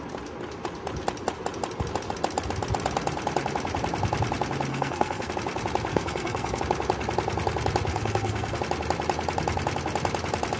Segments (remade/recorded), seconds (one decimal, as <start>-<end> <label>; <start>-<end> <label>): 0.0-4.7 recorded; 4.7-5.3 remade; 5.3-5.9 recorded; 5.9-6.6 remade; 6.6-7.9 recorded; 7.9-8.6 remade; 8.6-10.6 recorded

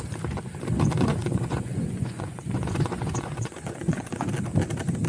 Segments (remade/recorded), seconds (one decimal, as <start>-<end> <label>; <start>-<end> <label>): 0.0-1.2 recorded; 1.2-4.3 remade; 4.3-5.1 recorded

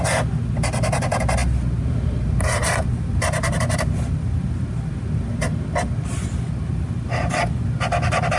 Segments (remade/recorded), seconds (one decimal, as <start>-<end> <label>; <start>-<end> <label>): 0.0-8.4 recorded